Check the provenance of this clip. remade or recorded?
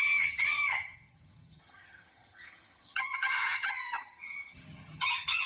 remade